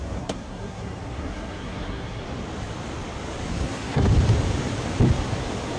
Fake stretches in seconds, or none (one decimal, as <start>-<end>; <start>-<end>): 0.0-2.2; 3.5-4.1